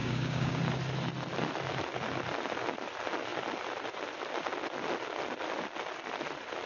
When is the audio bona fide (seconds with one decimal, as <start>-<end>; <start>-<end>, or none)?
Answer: 0.6-6.7